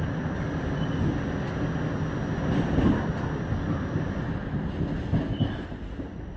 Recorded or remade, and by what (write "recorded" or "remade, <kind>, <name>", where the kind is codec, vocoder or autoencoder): recorded